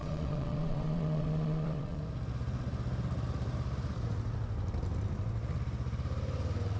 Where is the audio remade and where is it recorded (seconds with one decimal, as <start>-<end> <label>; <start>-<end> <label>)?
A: 0.0-2.0 remade; 2.0-6.8 recorded